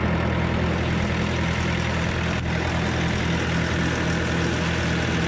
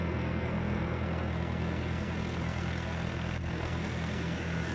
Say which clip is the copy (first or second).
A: second